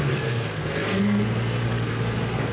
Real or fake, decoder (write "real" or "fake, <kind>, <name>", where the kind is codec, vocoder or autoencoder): fake, codec, SNAC